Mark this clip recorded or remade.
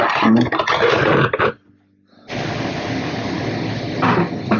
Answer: recorded